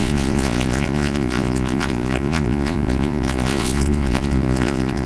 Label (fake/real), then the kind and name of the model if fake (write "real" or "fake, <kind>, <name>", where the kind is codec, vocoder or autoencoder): fake, vocoder, Vocos